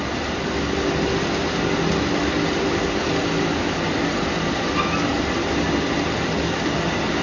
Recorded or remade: recorded